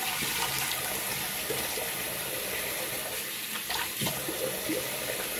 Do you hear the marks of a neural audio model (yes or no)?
no